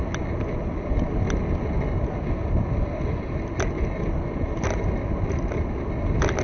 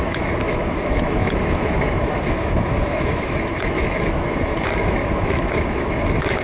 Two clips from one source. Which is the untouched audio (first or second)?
first